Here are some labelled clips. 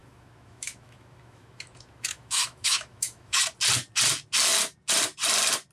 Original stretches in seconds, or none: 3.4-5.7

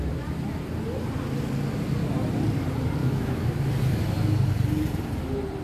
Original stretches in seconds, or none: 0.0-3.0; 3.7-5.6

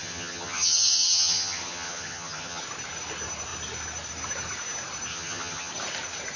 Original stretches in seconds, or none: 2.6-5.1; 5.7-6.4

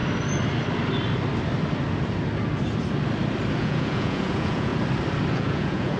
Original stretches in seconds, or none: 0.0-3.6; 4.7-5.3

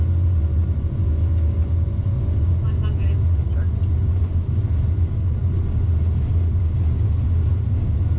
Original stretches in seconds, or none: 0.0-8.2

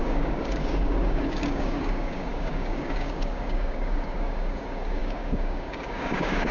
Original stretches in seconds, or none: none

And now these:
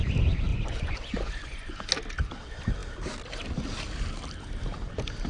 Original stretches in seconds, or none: 0.0-0.5; 1.8-5.3

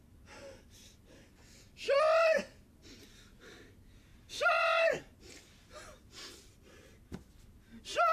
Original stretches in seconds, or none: 0.0-8.1